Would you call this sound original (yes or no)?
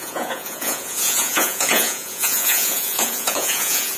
no